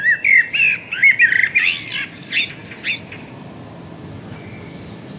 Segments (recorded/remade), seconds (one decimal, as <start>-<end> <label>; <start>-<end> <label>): 0.0-5.2 recorded